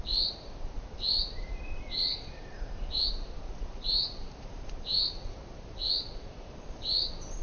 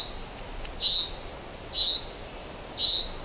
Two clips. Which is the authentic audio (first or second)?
second